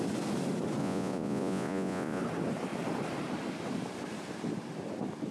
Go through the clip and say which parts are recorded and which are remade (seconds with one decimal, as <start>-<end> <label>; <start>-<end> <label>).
0.0-0.8 recorded; 0.8-2.2 remade; 2.2-5.3 recorded